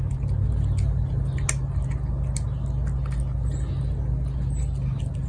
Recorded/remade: recorded